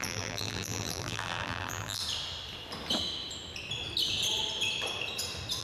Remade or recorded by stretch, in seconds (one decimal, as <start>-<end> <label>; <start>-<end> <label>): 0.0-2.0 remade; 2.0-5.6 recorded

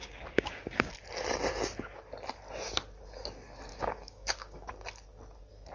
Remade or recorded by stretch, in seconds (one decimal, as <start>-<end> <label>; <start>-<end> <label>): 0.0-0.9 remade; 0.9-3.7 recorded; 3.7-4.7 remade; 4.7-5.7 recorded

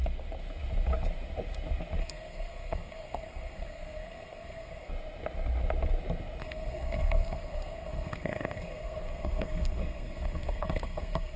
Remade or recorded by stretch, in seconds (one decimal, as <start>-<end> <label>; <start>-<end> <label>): 0.0-2.0 recorded; 2.0-4.9 remade; 4.9-6.4 recorded; 6.4-11.4 remade

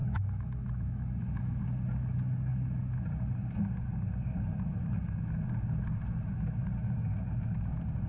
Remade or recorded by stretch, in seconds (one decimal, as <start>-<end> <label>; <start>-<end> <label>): 0.0-1.6 remade; 1.6-8.1 recorded

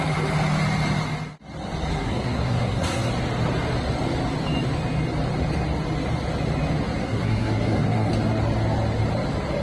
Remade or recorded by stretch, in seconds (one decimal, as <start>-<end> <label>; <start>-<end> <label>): 0.0-1.9 recorded; 1.9-3.1 remade; 3.1-7.0 recorded; 7.0-8.1 remade; 8.1-9.6 recorded

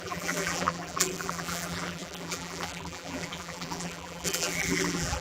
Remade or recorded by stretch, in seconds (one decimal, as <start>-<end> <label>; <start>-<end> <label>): 0.0-5.2 remade